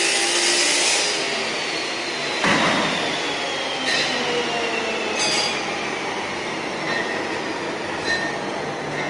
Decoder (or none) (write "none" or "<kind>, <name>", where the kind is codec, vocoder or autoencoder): none